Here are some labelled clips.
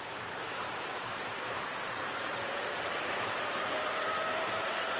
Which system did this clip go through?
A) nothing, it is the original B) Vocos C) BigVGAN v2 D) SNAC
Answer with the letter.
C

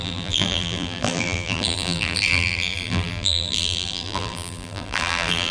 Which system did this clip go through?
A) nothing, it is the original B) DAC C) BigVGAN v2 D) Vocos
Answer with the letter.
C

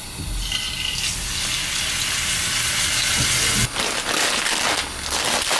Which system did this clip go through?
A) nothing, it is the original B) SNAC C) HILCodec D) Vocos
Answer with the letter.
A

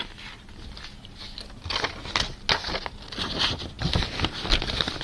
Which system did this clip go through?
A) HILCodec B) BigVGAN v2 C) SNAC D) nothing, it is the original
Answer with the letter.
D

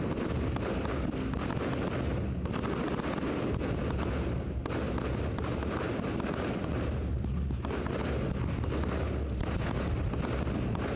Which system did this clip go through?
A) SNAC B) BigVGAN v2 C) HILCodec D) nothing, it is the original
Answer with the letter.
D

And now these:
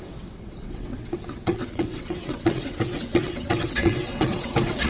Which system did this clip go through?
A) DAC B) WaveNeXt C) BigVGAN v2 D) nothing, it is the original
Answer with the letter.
B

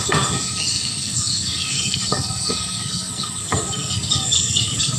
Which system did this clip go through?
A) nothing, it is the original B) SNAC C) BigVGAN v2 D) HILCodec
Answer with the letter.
B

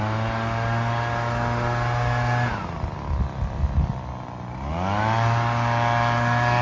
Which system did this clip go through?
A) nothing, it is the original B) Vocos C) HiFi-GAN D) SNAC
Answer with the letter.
A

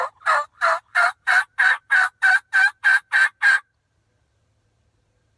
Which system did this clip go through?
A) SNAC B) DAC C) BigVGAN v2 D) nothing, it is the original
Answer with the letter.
C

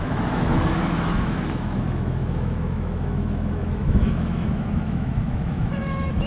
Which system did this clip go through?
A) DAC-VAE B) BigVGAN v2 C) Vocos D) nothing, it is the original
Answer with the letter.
A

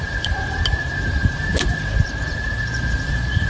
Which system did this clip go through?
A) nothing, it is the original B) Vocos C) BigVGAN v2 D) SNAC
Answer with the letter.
C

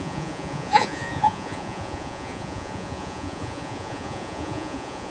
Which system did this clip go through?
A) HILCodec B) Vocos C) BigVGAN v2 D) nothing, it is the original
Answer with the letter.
B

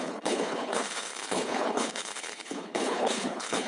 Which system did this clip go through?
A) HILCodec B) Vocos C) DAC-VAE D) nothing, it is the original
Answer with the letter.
A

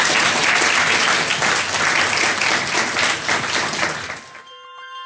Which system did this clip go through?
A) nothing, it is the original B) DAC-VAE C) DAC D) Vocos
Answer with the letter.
A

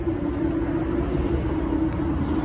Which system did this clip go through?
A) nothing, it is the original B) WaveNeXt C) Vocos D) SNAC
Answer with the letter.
A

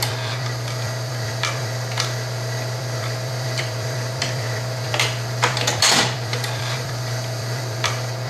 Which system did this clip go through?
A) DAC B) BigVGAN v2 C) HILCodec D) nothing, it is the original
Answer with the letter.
B